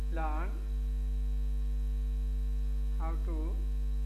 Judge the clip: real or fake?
real